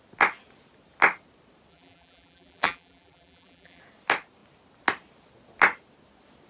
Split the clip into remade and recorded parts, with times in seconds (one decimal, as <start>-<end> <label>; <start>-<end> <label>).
0.0-1.7 recorded; 1.7-3.8 remade; 3.8-6.5 recorded